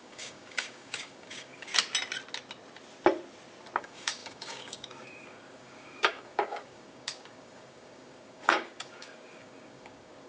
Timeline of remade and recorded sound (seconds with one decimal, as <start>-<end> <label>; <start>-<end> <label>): 0.0-1.7 remade; 1.7-3.8 recorded; 3.8-10.3 remade